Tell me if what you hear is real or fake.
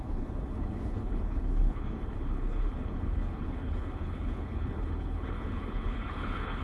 fake